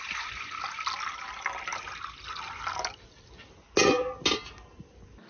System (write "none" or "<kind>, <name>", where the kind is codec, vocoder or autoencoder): none